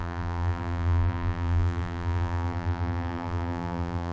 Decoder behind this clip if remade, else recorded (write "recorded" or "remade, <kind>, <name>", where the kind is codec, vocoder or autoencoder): remade, vocoder, BigVGAN v2